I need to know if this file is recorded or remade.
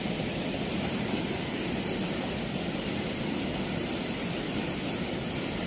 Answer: recorded